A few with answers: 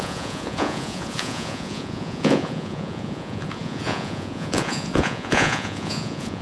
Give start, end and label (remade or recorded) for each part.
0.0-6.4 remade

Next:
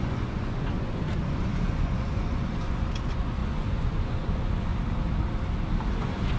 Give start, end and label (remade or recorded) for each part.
0.0-4.7 remade; 4.7-5.9 recorded; 5.9-6.4 remade

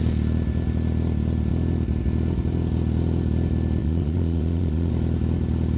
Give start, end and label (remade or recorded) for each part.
0.0-3.8 recorded; 3.8-4.9 remade; 4.9-5.8 recorded